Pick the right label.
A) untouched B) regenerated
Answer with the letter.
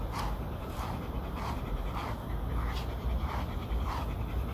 A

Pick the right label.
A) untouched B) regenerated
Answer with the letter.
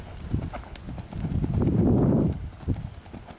A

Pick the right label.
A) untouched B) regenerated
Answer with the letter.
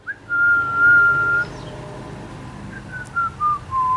A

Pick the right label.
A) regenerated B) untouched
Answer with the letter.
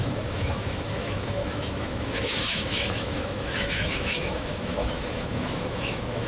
A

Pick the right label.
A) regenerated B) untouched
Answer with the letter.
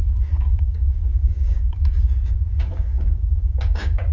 A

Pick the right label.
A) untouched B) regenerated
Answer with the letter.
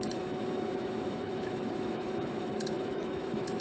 B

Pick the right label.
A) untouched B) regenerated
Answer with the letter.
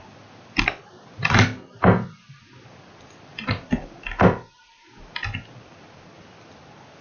A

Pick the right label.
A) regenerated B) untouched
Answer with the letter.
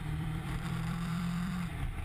A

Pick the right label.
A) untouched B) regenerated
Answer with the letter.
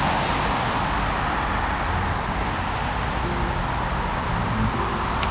A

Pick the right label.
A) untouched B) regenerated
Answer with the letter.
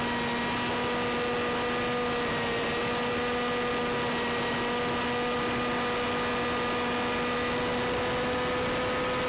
A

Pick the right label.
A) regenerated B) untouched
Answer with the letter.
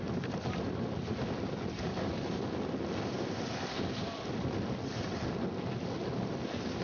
B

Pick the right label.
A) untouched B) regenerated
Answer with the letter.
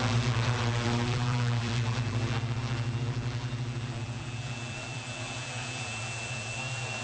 B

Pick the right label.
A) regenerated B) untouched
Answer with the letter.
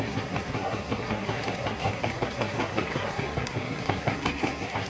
A